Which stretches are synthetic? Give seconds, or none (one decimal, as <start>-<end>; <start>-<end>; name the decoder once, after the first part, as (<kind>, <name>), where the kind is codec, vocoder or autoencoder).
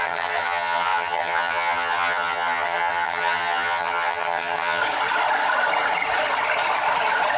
0.0-4.8 (vocoder, HiFi-GAN)